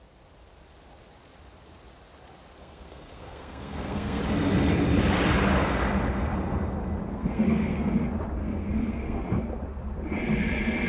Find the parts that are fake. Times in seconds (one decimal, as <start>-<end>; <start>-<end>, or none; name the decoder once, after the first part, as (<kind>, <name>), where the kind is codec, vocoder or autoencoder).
2.6-4.2 (codec, SNAC); 7.1-7.9; 8.4-9.2